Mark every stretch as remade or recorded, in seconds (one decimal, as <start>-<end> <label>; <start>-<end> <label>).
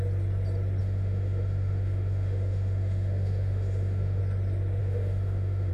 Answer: 0.0-0.8 recorded; 0.8-4.2 remade; 4.2-4.8 recorded; 4.8-5.7 remade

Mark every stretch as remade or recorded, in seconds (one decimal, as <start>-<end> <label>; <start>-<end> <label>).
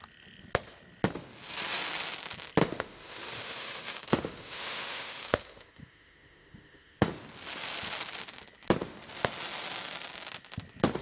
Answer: 0.0-2.6 recorded; 2.6-7.1 remade; 7.1-11.0 recorded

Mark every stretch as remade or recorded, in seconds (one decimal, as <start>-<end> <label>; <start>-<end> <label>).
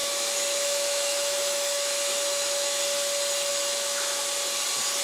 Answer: 0.0-2.8 remade; 2.8-3.5 recorded; 3.5-4.1 remade; 4.1-5.0 recorded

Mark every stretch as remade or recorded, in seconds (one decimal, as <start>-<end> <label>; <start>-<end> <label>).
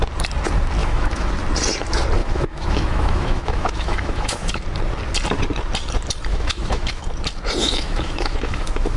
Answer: 0.0-0.8 recorded; 0.8-1.3 remade; 1.3-2.2 recorded; 2.2-4.6 remade; 4.6-6.3 recorded; 6.3-7.0 remade; 7.0-7.6 recorded; 7.6-9.0 remade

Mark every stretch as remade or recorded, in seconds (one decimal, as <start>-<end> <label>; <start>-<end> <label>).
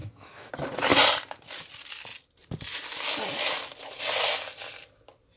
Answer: 0.0-0.5 remade; 0.5-5.4 recorded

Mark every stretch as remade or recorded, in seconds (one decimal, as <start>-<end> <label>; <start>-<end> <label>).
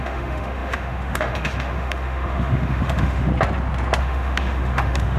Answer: 0.0-3.3 remade; 3.3-4.0 recorded; 4.0-5.2 remade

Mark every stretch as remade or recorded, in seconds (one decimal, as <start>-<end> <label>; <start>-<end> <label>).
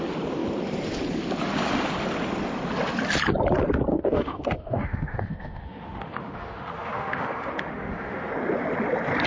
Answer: 0.0-3.9 recorded; 3.9-8.3 remade; 8.3-9.3 recorded